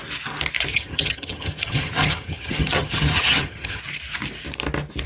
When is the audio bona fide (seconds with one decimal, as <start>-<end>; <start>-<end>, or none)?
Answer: 0.0-0.7; 3.8-5.1